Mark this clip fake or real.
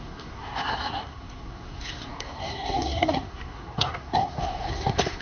fake